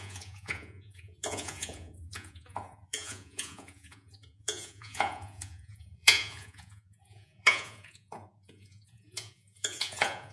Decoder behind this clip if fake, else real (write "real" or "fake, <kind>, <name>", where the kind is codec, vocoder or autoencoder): fake, vocoder, Vocos